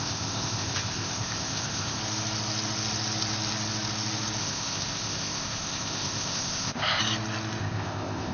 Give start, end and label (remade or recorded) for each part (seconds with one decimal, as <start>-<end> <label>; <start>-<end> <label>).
0.0-2.0 remade; 2.0-4.4 recorded; 4.4-7.0 remade; 7.0-7.6 recorded; 7.6-8.3 remade